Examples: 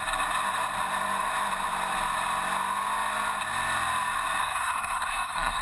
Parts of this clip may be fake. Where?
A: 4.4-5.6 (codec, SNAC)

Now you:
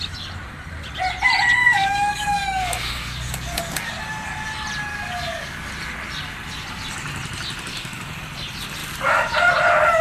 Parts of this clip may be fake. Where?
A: 1.6-3.9 (codec, DAC); 4.9-5.7; 7.7-8.2

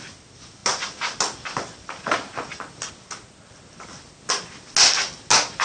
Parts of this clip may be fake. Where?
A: none

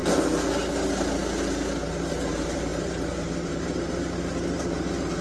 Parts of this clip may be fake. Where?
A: 2.1-5.2 (vocoder, BigVGAN v2)

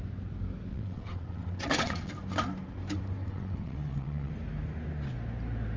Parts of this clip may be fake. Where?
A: 0.7-2.1 (vocoder, WaveNeXt); 3.2-4.3

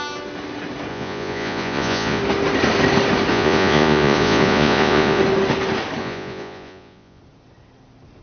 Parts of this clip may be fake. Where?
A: 0.9-2.2 (vocoder, Vocos); 3.3-5.2; 6.0-7.2

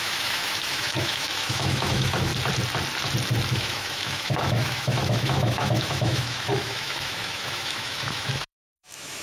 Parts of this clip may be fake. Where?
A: 0.0-2.3 (autoencoder, DAC-VAE); 3.5-9.2

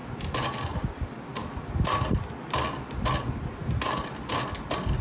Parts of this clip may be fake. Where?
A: none